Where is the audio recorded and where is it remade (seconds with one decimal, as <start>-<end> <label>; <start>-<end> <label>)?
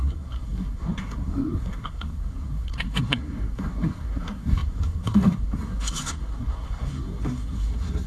0.0-8.1 remade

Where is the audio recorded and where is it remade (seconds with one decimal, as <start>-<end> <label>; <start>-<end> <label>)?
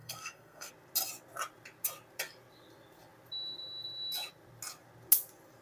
0.0-0.7 remade; 0.7-5.6 recorded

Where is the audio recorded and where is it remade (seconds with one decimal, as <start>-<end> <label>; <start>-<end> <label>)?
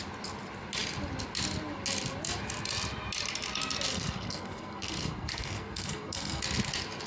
0.0-3.9 recorded; 3.9-6.4 remade; 6.4-7.1 recorded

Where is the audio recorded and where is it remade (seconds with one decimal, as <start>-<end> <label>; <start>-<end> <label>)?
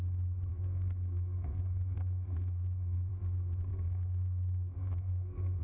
0.0-0.5 recorded; 0.5-3.1 remade; 3.1-3.7 recorded; 3.7-5.6 remade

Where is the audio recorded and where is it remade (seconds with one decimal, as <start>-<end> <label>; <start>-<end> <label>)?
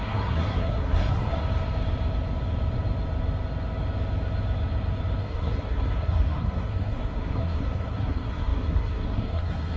0.0-1.4 remade; 1.4-5.2 recorded; 5.2-9.8 remade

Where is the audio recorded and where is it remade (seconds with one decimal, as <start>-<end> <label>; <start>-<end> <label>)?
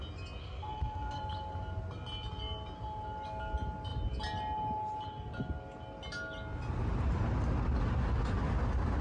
0.0-0.4 recorded; 0.4-1.2 remade; 1.2-9.0 recorded